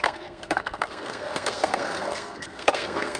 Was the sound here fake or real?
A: fake